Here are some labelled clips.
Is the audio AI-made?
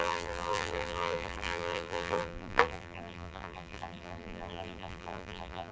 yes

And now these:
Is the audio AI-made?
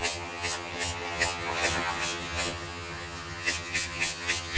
yes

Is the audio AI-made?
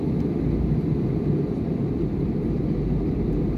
yes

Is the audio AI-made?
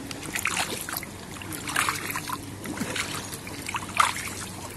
no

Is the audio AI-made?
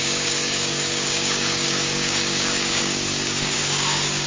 yes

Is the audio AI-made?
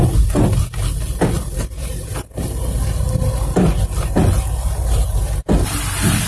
no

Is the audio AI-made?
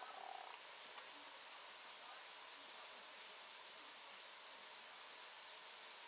no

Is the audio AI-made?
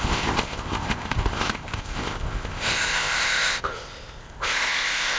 yes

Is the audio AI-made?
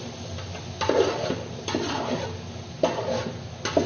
no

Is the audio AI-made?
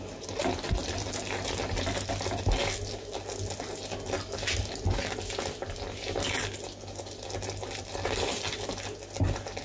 no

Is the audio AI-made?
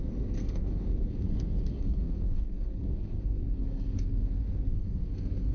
yes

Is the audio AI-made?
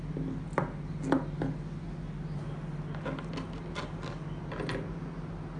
no